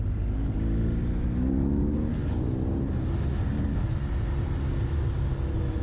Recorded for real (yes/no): yes